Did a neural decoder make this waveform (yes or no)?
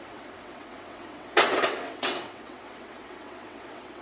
yes